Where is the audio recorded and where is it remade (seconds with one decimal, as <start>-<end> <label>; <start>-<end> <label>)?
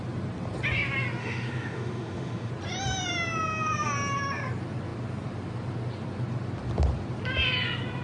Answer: 0.0-1.2 recorded; 1.2-2.5 remade; 2.5-8.0 recorded